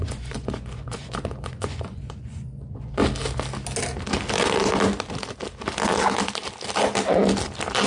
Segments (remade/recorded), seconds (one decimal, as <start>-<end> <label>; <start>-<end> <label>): 0.0-3.0 remade; 3.0-7.9 recorded